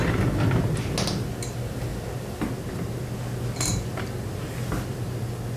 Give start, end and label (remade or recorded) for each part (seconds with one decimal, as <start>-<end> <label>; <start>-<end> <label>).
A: 0.0-5.6 recorded